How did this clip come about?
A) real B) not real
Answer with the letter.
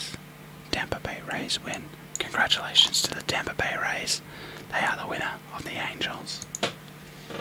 A